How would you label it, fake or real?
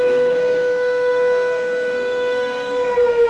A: fake